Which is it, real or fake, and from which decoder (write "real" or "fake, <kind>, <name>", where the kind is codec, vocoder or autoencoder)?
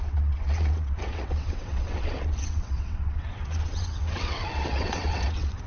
fake, vocoder, WaveNeXt